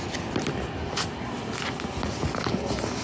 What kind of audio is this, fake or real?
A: real